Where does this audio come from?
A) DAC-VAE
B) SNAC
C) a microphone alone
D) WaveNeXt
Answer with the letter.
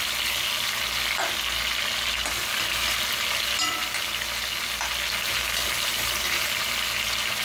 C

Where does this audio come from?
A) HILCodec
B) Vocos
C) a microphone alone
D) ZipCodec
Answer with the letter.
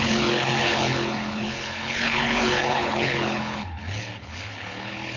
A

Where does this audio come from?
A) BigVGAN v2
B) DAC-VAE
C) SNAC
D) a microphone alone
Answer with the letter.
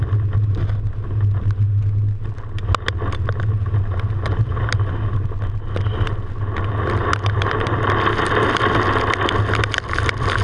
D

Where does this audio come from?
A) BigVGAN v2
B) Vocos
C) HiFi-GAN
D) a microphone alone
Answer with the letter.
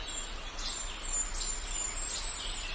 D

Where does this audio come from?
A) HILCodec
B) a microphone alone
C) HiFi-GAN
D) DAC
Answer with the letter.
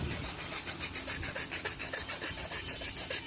B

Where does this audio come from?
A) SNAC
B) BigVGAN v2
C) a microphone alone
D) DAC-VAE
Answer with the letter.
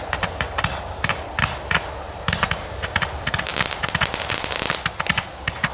C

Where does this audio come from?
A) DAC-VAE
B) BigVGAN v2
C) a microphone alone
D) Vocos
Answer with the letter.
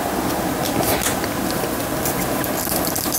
C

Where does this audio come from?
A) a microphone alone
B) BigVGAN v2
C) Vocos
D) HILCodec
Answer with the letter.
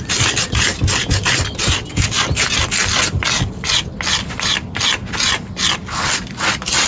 A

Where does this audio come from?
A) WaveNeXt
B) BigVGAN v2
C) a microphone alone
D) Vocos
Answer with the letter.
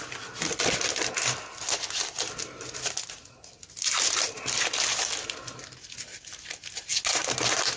C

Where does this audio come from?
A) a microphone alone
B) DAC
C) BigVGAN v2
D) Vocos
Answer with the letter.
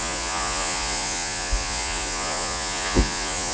D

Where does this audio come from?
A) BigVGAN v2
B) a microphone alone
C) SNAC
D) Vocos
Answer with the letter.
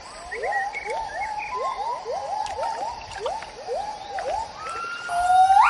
B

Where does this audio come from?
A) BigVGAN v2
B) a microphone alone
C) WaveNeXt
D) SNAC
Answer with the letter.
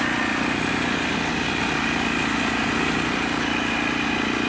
B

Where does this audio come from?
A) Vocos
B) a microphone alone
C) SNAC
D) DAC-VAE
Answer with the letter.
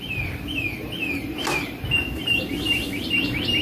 B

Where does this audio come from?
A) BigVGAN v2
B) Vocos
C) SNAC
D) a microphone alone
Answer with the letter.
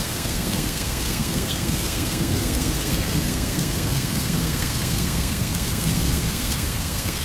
C